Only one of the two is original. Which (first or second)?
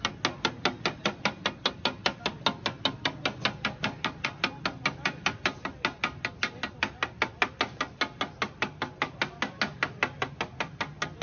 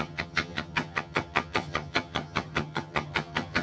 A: first